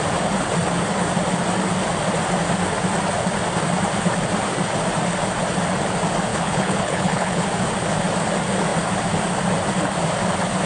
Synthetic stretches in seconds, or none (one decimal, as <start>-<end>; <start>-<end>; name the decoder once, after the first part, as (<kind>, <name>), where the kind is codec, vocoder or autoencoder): 6.3-7.4 (codec, HILCodec)